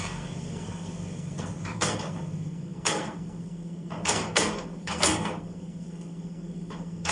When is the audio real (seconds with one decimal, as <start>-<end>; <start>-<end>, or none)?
none

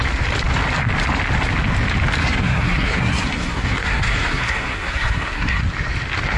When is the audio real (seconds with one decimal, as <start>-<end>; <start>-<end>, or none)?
0.0-2.2; 5.6-6.4